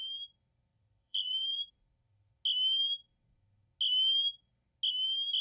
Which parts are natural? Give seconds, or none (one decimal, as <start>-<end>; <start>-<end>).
0.0-0.7; 1.7-5.4